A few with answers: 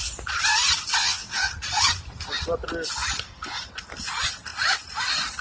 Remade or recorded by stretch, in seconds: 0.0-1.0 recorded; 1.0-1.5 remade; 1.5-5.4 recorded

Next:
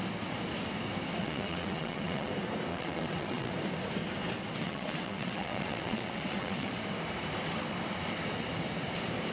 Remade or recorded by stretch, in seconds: 0.0-1.2 recorded; 1.2-2.3 remade; 2.3-2.7 recorded; 2.7-3.5 remade; 3.5-4.6 recorded; 4.6-6.7 remade; 6.7-9.3 recorded

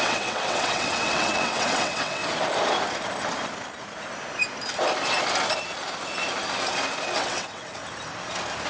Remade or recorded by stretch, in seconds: 0.0-2.2 remade; 2.2-7.2 recorded; 7.2-7.8 remade; 7.8-8.7 recorded

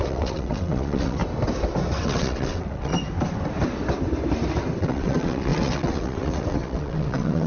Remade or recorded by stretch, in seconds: 0.0-1.2 remade; 1.2-2.0 recorded; 2.0-2.9 remade; 2.9-4.8 recorded; 4.8-7.5 remade

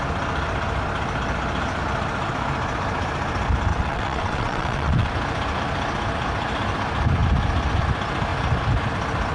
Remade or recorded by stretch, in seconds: 0.0-3.7 recorded; 3.7-5.1 remade; 5.1-9.3 recorded

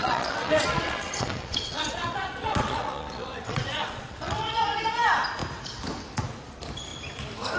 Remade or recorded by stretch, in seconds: 0.0-4.6 remade; 4.6-7.6 recorded

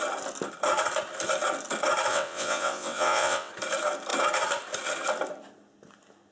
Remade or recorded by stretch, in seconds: 0.0-2.1 recorded; 2.1-3.5 remade; 3.5-6.3 recorded

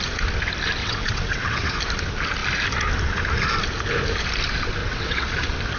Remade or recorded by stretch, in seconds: 0.0-0.8 recorded; 0.8-1.8 remade; 1.8-4.8 recorded; 4.8-5.3 remade; 5.3-5.8 recorded